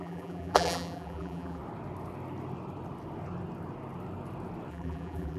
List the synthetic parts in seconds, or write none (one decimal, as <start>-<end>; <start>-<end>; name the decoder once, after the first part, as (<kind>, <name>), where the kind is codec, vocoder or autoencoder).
0.0-1.6 (vocoder, BigVGAN v2); 4.7-5.4